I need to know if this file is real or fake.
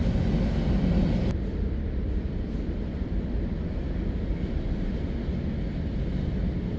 real